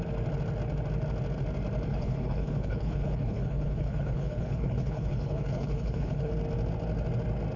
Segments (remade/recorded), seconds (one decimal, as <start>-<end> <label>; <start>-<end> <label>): 0.0-1.9 recorded; 1.9-6.3 remade; 6.3-7.6 recorded